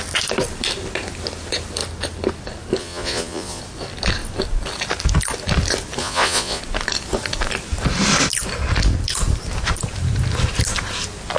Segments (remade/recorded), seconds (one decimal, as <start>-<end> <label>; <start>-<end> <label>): 0.0-2.8 recorded; 2.8-3.6 remade; 3.6-6.0 recorded; 6.0-6.6 remade; 6.6-11.4 recorded